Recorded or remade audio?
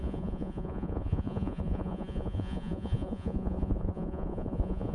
remade